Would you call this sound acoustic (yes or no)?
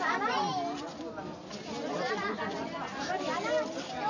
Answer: yes